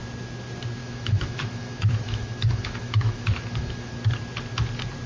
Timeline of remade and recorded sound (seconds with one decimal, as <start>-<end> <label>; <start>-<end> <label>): 0.0-0.8 recorded; 0.8-3.9 remade; 3.9-5.1 recorded